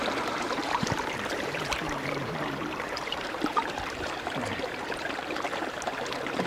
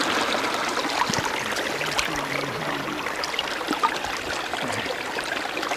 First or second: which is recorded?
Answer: second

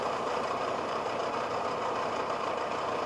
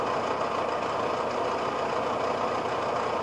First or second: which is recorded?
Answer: second